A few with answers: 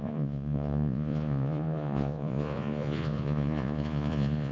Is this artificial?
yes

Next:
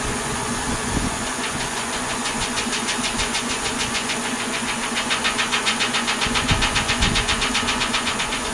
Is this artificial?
yes